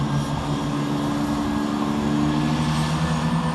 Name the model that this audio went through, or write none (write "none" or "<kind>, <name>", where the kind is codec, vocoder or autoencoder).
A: none